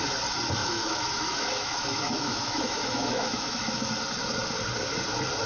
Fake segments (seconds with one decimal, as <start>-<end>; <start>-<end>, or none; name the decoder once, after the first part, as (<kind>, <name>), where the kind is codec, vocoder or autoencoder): 0.6-3.9 (autoencoder, DAC-VAE)